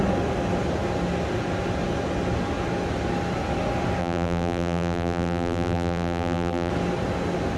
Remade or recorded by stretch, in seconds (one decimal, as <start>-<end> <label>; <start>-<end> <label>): 0.0-4.0 recorded; 4.0-6.7 remade; 6.7-7.6 recorded